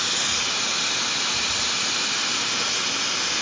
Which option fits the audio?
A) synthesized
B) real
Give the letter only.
B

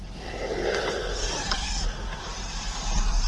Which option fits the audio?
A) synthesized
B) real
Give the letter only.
A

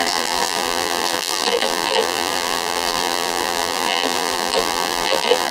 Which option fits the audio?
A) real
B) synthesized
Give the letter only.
B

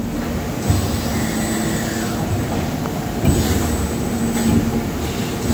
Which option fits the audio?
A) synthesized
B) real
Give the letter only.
B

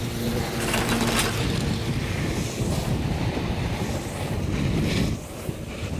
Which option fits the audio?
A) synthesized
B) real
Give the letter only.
B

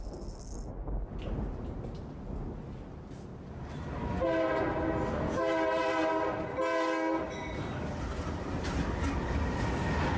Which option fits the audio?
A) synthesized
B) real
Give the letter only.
B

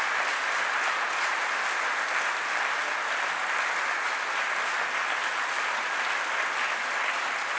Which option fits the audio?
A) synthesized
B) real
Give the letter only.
B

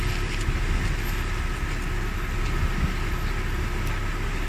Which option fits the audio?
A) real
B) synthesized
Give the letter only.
A